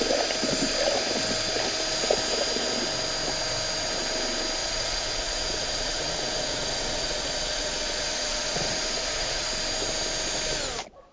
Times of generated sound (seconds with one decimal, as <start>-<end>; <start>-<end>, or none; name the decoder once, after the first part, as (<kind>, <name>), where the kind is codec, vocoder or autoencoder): 4.6-9.5 (vocoder, Vocos)